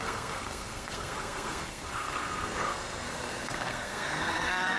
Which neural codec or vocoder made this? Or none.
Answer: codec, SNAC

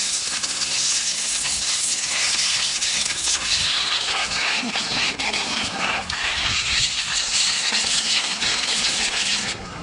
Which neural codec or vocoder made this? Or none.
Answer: codec, SNAC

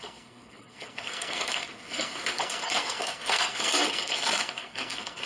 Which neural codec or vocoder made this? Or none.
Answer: codec, SNAC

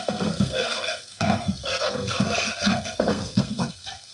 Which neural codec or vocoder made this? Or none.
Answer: codec, SNAC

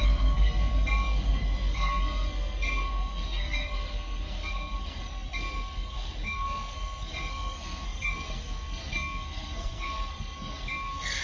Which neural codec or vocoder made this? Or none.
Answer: codec, SNAC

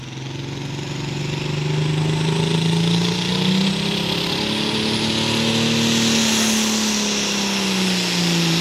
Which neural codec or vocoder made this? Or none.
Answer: none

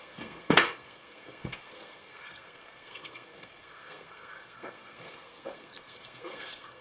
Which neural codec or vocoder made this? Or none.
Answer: codec, SNAC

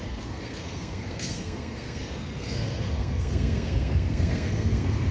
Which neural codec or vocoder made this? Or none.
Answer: codec, SNAC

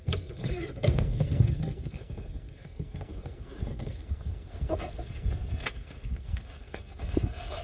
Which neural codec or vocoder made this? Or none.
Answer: codec, SNAC